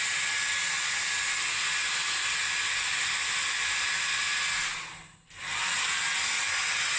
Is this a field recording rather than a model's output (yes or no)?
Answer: yes